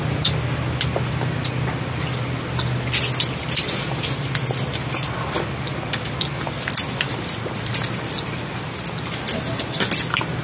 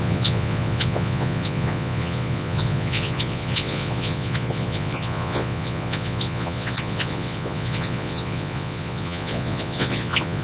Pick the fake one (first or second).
second